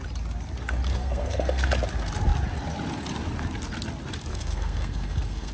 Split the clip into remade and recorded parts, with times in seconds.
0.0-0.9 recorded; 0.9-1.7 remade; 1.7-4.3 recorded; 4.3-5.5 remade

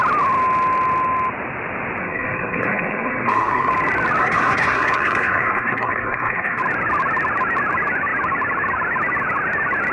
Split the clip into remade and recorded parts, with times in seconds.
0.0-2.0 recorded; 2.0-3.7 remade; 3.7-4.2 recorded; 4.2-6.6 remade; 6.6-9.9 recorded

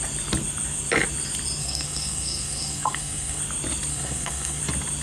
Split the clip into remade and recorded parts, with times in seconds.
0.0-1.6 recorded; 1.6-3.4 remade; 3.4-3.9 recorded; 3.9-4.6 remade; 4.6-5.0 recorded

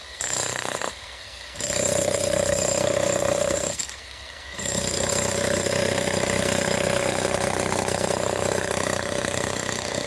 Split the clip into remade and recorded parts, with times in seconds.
0.0-10.1 remade

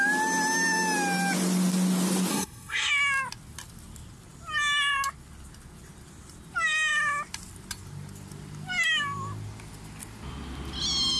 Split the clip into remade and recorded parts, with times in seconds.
0.0-2.3 recorded; 2.3-2.9 remade; 2.9-11.2 recorded

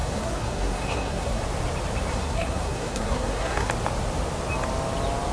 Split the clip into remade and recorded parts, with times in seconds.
0.0-1.4 remade; 1.4-2.1 recorded; 2.1-3.7 remade; 3.7-5.3 recorded

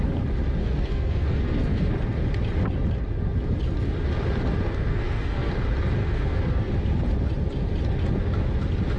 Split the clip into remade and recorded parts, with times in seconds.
0.0-0.6 recorded; 0.6-1.9 remade; 1.9-4.9 recorded; 4.9-5.5 remade; 5.5-6.0 recorded; 6.0-6.7 remade; 6.7-9.0 recorded

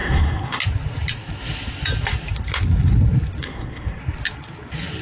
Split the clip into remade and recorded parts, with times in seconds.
0.0-0.6 remade; 0.6-3.4 recorded; 3.4-4.0 remade; 4.0-5.0 recorded